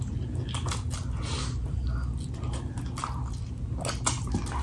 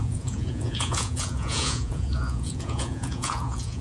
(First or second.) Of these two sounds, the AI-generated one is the second